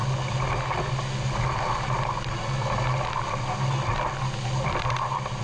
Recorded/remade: recorded